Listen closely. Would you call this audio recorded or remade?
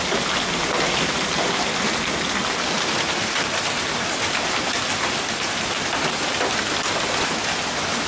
recorded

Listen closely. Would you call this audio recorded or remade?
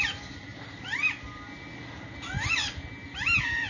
recorded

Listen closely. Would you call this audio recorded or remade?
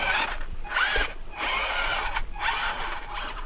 recorded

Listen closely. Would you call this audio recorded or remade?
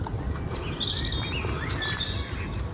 recorded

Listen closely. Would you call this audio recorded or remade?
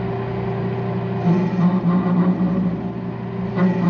recorded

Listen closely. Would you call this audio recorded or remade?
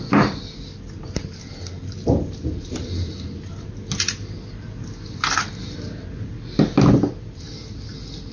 recorded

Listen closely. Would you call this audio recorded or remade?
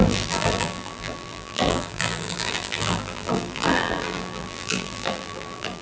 remade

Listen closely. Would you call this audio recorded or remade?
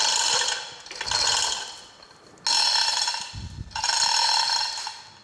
recorded